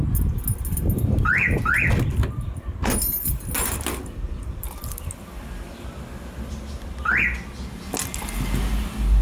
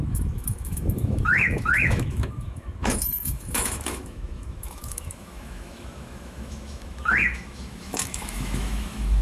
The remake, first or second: second